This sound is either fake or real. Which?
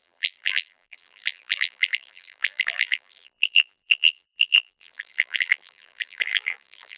fake